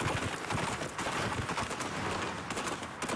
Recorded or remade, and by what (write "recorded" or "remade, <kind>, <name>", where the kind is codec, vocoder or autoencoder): recorded